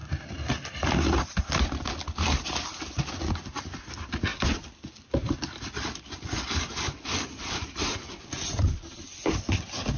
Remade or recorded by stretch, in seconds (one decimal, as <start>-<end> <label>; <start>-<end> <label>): 0.0-10.0 recorded